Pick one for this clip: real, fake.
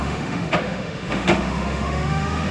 fake